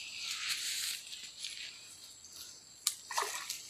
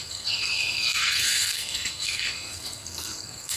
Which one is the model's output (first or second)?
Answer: second